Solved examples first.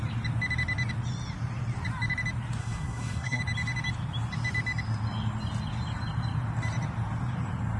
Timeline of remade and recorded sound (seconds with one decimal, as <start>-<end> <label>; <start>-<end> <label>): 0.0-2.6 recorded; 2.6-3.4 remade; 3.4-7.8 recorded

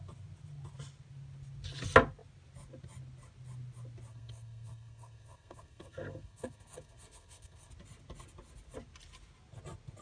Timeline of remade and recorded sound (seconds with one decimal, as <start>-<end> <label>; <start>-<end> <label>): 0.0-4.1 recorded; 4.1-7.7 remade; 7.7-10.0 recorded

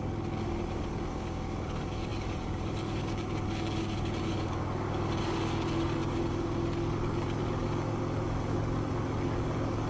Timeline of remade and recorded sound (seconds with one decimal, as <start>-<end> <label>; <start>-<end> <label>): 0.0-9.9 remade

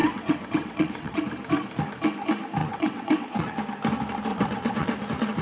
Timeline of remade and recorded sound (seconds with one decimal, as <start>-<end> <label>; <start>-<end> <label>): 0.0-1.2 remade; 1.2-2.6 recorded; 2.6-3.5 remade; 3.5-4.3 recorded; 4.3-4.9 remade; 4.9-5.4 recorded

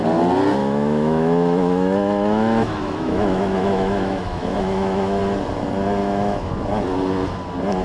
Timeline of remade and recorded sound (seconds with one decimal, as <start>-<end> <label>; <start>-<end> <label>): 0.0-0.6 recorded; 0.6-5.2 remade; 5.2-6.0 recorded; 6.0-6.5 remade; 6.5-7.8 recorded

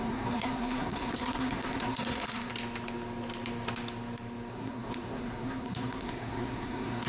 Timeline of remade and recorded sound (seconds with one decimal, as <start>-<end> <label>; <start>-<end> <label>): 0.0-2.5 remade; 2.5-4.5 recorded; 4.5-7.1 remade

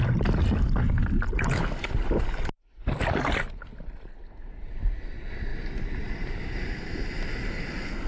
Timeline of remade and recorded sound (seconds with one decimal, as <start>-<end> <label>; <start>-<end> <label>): 0.0-5.5 recorded; 5.5-6.3 remade; 6.3-8.1 recorded